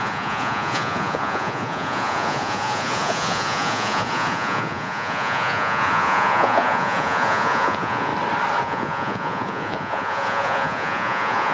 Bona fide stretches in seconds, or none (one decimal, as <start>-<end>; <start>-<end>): 8.1-8.6